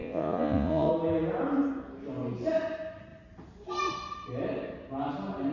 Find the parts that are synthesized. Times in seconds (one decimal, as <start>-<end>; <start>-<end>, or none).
0.0-0.9